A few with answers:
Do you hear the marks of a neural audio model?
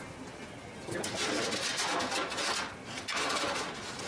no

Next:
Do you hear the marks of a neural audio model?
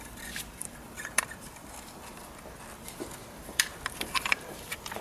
yes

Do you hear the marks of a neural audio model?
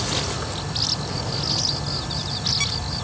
no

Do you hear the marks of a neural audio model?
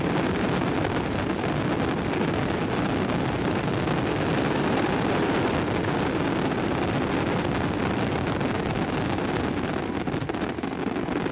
no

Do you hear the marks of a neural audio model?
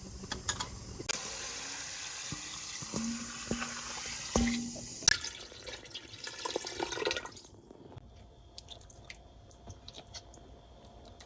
no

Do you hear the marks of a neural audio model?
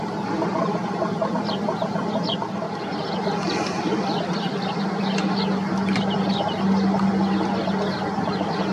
no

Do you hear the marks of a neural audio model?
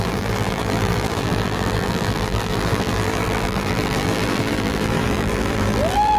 yes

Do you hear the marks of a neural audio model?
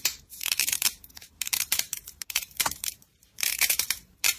yes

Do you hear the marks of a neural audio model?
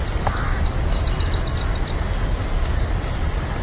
no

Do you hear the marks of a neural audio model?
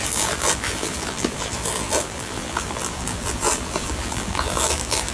yes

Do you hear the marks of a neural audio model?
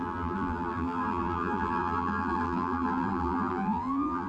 yes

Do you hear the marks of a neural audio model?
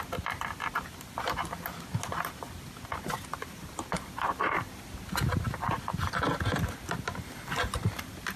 no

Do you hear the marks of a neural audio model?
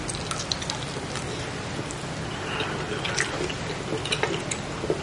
no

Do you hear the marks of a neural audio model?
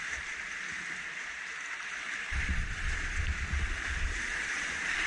no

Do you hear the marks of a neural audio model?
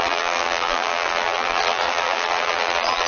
yes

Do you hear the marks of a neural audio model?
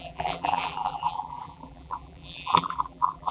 yes